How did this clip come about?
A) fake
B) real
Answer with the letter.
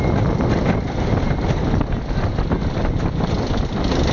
B